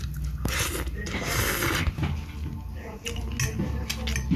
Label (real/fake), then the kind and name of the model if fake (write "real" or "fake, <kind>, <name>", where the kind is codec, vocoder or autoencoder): real